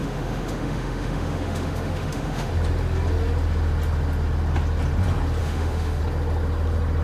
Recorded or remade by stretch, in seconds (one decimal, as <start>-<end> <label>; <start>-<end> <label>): 0.0-2.5 remade; 2.5-5.4 recorded; 5.4-6.0 remade; 6.0-7.0 recorded